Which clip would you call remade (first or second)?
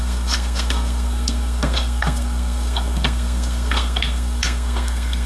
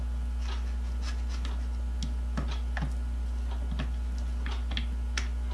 first